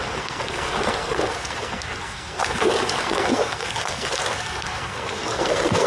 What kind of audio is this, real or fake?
fake